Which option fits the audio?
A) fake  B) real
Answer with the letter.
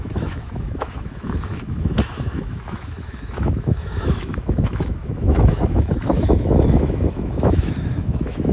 A